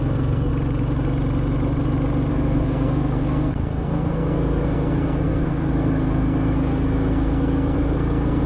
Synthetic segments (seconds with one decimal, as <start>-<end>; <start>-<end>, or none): 0.0-0.5; 2.3-8.5

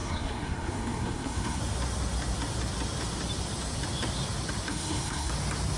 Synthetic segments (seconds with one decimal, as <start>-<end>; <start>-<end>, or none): 0.0-1.6; 4.7-5.3

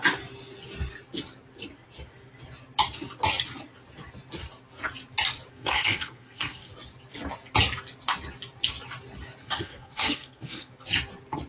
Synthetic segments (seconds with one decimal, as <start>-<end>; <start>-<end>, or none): 5.5-6.7; 9.4-10.7

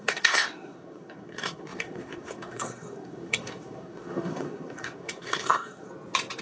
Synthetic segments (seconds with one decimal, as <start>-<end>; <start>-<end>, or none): 0.0-5.9

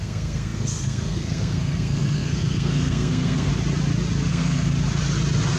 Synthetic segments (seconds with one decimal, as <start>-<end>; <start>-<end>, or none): 0.0-3.5; 4.3-4.7